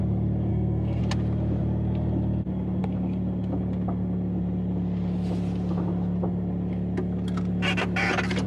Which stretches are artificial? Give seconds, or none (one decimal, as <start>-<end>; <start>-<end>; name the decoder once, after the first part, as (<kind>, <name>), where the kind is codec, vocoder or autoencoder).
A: 0.5-1.0 (codec, SNAC)